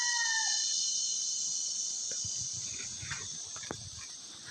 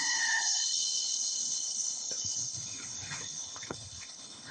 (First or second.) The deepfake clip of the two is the second